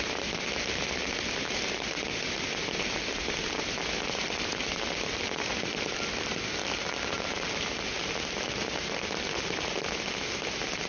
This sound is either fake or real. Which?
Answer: real